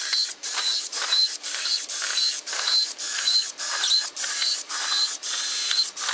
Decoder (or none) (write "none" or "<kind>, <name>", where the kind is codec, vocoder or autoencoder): none